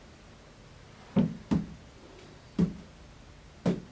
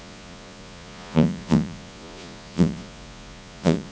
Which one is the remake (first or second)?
second